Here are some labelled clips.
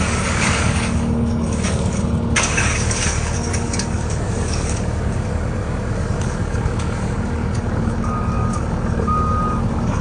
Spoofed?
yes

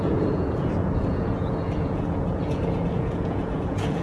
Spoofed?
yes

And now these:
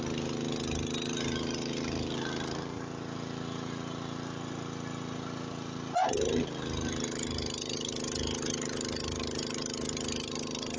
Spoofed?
no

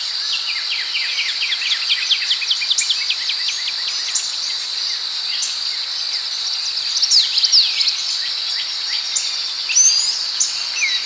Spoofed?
no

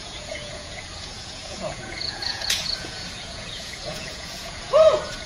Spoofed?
yes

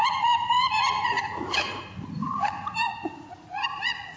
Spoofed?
yes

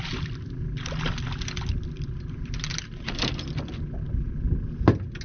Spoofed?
no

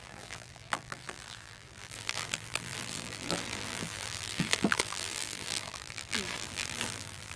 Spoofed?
yes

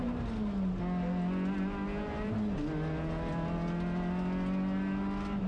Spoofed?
no